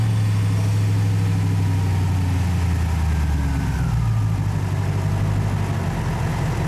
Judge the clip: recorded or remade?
recorded